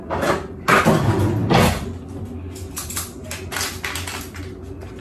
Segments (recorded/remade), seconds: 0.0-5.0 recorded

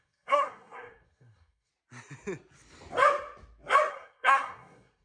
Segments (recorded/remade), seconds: 0.0-1.7 remade; 1.7-3.9 recorded; 3.9-5.0 remade

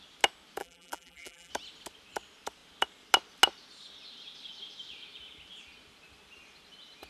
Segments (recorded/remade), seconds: 0.0-0.6 recorded; 0.6-1.5 remade; 1.5-7.1 recorded

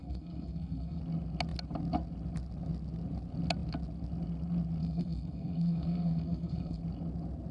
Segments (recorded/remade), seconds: 0.0-1.0 remade; 1.0-4.8 recorded; 4.8-6.8 remade; 6.8-7.5 recorded

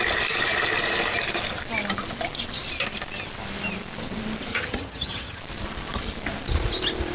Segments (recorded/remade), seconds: 0.0-4.5 recorded; 4.5-5.4 remade; 5.4-7.1 recorded

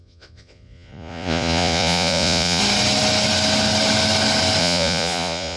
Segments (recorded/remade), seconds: 0.0-2.6 remade; 2.6-4.6 recorded; 4.6-5.6 remade

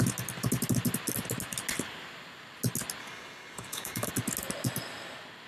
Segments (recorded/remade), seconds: 0.0-3.0 recorded; 3.0-4.1 remade; 4.1-5.5 recorded

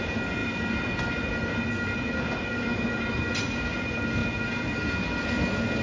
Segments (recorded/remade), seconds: 0.0-5.8 recorded